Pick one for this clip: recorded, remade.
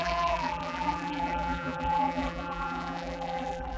remade